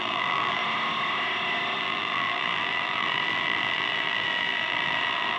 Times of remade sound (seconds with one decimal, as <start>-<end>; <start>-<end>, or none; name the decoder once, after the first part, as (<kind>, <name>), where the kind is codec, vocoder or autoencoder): 0.0-0.6 (vocoder, BigVGAN v2); 1.8-5.4